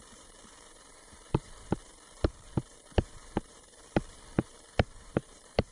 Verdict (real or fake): fake